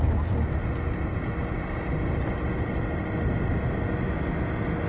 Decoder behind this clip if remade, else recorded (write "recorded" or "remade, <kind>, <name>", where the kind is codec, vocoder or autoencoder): recorded